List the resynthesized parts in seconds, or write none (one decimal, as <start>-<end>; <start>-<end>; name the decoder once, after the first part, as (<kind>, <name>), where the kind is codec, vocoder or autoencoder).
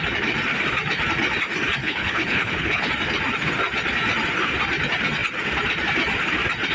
1.8-2.9 (codec, HILCodec)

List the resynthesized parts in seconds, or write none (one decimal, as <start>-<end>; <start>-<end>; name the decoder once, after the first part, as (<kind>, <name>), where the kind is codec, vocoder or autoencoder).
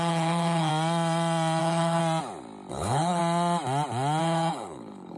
0.0-0.7 (codec, HILCodec); 1.6-2.0; 2.7-3.2; 4.2-5.2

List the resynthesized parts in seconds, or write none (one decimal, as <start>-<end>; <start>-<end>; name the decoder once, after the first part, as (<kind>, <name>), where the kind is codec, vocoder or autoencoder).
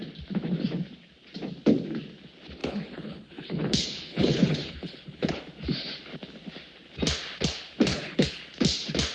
2.6-5.4 (codec, HILCodec); 7.9-8.4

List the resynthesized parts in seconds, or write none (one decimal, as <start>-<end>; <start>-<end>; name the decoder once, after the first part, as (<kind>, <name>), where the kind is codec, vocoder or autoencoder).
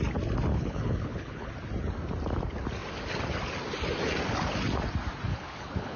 0.5-1.5 (codec, HILCodec); 5.3-6.0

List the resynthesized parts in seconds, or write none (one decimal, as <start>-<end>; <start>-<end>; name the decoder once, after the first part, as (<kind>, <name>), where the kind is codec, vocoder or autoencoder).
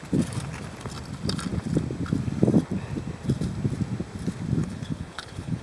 4.6-5.6 (codec, HILCodec)